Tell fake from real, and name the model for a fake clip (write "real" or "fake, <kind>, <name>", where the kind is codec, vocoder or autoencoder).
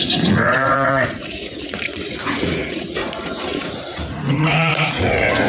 fake, vocoder, Vocos